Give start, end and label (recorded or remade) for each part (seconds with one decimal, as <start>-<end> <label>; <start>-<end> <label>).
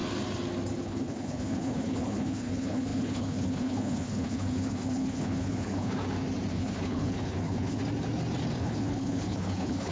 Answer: 0.0-0.8 recorded; 0.8-6.0 remade; 6.0-6.5 recorded; 6.5-7.8 remade; 7.8-8.6 recorded; 8.6-9.9 remade